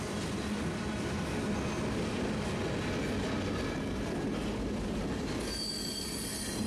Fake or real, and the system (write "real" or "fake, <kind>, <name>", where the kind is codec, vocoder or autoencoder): real